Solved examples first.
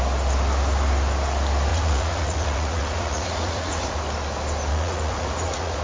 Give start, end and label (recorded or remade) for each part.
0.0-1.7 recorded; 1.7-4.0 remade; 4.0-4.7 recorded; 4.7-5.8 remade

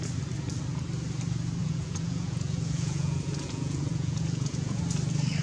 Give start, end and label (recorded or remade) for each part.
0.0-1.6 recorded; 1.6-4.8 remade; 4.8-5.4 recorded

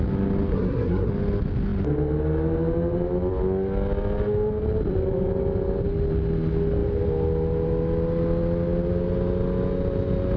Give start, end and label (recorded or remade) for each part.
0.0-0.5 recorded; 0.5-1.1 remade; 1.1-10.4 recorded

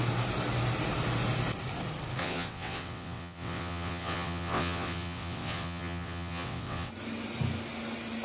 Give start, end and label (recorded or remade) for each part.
0.0-2.2 recorded; 2.2-6.9 remade; 6.9-8.2 recorded

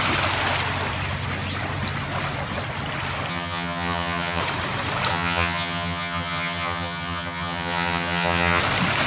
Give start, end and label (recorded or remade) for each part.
0.0-3.3 recorded; 3.3-4.4 remade; 4.4-5.1 recorded; 5.1-8.6 remade; 8.6-9.1 recorded

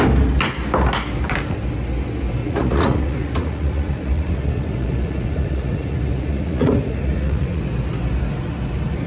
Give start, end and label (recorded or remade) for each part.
0.0-2.4 recorded; 2.4-7.6 remade; 7.6-9.1 recorded

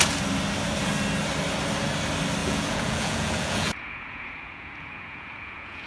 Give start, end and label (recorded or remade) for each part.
0.0-2.4 recorded; 2.4-5.9 remade

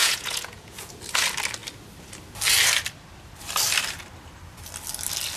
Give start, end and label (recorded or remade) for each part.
0.0-0.9 remade; 0.9-5.4 recorded